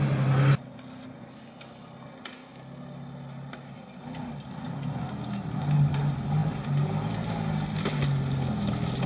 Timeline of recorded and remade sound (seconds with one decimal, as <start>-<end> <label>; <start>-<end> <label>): 0.0-9.1 recorded